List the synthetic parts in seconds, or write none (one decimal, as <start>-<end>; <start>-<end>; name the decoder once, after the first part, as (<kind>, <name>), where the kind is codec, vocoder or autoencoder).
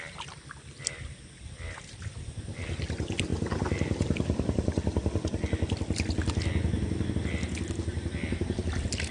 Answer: none